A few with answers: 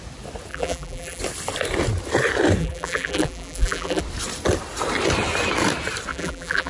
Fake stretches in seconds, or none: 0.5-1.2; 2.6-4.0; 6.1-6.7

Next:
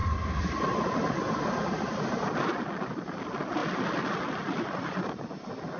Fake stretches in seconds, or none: 0.0-0.6; 3.6-5.2

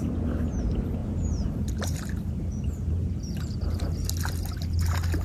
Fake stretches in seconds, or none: 1.0-4.1

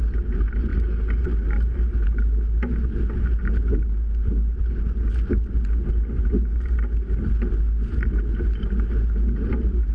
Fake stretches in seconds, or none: none

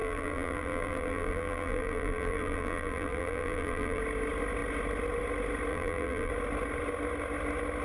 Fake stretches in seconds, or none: 0.0-4.0; 5.7-6.3

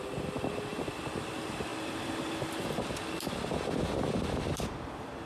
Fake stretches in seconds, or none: none

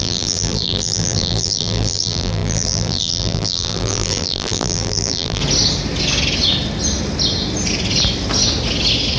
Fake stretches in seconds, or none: 0.0-5.4